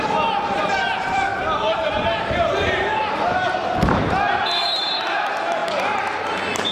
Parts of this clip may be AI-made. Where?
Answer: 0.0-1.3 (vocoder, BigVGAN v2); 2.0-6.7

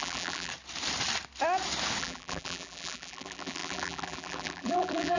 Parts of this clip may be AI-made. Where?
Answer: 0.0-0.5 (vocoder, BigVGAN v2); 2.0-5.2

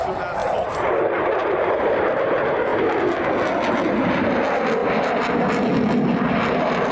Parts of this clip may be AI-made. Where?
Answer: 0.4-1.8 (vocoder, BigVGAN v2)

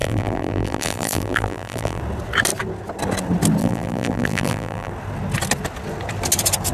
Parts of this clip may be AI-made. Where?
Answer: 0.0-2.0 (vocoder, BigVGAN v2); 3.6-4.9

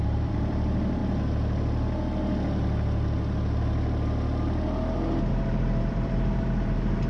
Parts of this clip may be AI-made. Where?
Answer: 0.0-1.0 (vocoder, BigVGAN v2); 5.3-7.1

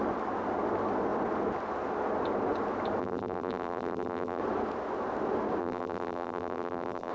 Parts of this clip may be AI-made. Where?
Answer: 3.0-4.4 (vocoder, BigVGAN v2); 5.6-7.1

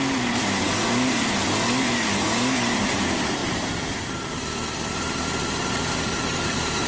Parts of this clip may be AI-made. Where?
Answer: 3.4-4.4 (vocoder, BigVGAN v2); 5.6-6.9